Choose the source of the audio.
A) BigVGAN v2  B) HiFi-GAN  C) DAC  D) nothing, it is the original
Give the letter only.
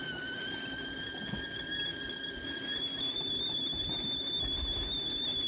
D